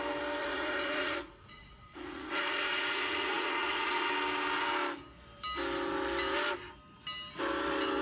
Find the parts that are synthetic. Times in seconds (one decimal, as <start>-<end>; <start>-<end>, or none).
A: 0.4-4.1